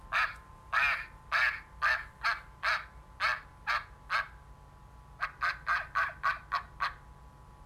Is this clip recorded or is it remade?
recorded